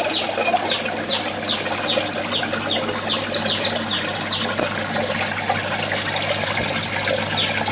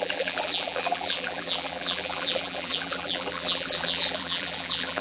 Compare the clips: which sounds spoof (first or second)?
second